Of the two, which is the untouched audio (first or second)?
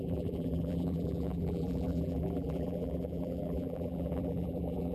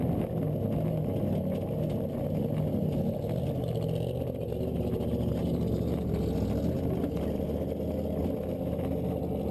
second